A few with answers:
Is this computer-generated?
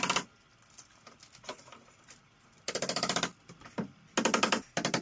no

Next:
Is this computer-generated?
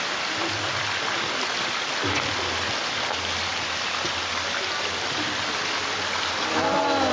no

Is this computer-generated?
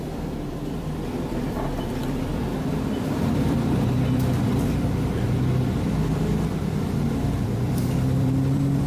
yes